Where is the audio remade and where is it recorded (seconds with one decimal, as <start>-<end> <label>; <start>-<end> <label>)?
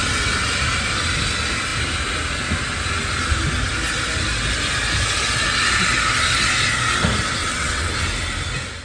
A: 0.0-7.4 recorded; 7.4-7.9 remade; 7.9-8.8 recorded